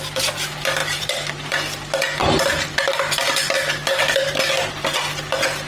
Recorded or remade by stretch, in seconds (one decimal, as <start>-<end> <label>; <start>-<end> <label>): 0.0-0.8 recorded; 0.8-1.5 remade; 1.5-5.7 recorded